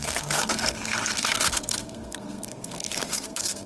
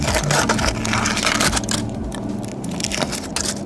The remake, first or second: first